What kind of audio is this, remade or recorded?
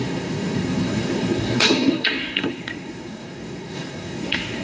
remade